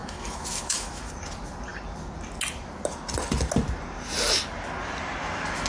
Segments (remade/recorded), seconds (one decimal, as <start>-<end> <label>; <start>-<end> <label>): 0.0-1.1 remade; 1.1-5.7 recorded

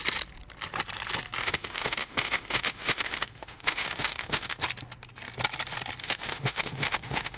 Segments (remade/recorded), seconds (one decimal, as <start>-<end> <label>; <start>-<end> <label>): 0.0-1.4 recorded; 1.4-4.6 remade; 4.6-6.0 recorded; 6.0-7.4 remade

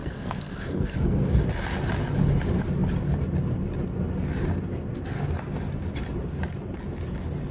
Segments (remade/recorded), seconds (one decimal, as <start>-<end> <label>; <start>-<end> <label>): 0.0-1.3 remade; 1.3-7.5 recorded

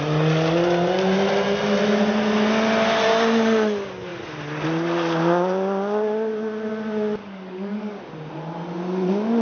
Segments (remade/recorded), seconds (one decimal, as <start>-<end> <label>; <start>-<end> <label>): 0.0-7.2 recorded; 7.2-8.0 remade; 8.0-9.4 recorded